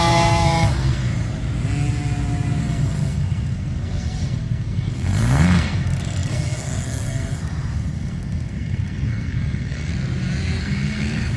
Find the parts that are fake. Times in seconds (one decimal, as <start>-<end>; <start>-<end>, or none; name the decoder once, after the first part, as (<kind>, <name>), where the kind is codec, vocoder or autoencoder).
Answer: 0.0-1.1 (codec, SNAC); 2.6-9.9; 10.6-11.4

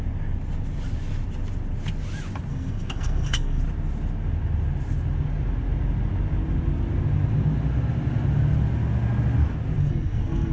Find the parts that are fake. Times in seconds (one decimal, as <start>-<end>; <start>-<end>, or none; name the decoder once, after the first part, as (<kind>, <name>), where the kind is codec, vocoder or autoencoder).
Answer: 2.5-3.6 (codec, SNAC); 9.8-10.5